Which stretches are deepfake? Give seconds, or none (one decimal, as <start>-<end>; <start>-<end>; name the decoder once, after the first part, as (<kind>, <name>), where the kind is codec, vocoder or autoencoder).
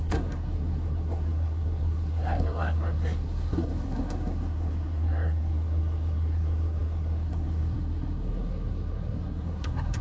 0.0-10.0 (codec, SNAC)